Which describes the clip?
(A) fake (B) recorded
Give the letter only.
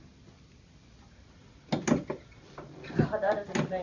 B